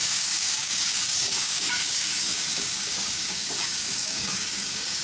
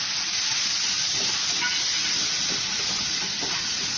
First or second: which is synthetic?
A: first